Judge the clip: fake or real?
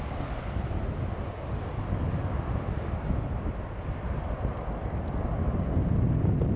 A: real